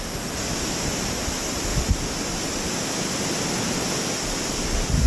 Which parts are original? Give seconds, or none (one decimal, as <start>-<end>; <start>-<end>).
0.0-5.1